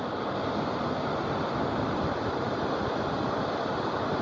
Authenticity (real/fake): real